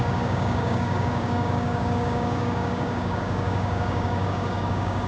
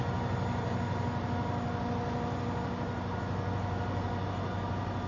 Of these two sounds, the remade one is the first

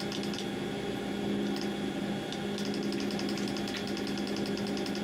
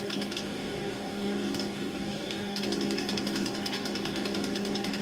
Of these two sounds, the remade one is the second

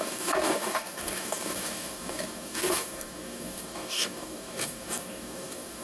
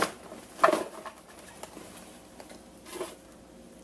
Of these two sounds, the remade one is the first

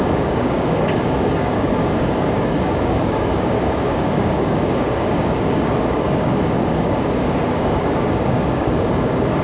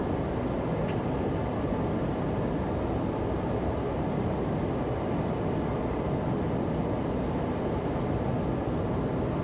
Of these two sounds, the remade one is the first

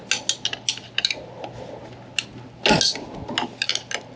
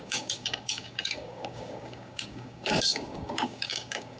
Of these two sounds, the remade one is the second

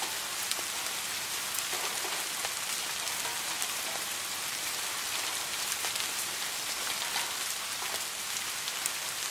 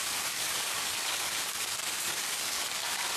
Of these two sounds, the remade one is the second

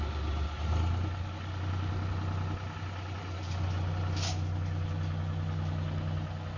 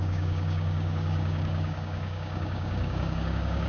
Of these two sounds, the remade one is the second